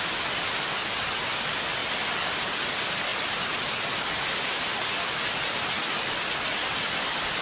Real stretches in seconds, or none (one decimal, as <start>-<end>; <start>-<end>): 0.0-7.4